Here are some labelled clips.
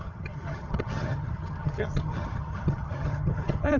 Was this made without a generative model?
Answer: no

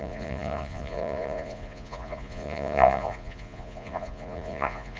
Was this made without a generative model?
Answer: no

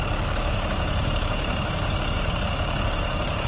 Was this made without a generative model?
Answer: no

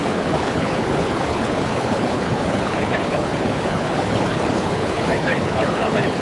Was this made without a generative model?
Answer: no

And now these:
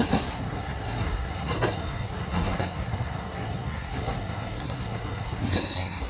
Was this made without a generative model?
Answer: no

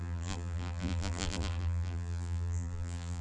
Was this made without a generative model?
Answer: no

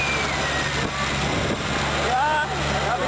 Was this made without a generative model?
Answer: yes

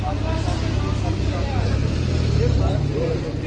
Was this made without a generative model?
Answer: yes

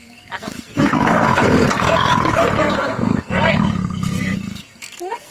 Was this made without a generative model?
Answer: no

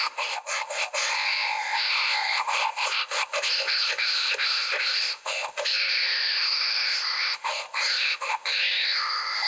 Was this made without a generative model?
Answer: no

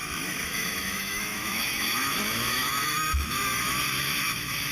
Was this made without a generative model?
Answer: no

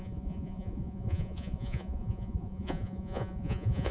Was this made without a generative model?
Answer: no